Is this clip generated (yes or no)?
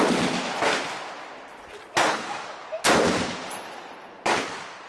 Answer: no